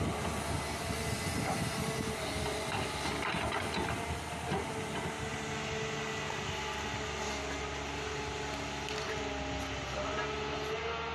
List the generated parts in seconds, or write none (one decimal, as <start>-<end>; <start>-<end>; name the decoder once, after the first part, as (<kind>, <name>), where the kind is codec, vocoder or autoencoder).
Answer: none